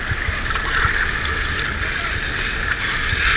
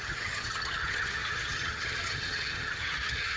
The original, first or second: first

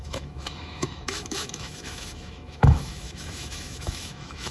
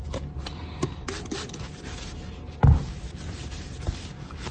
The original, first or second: second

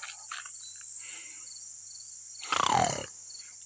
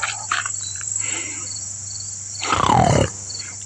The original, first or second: first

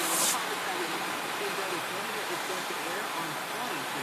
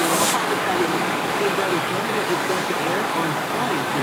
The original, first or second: first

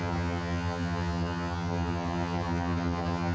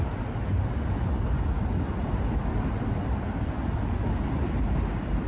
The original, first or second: second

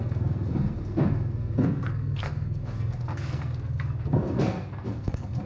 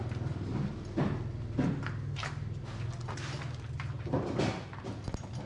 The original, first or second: second